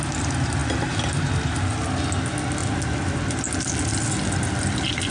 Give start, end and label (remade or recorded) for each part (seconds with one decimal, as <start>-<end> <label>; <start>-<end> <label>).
0.0-5.1 recorded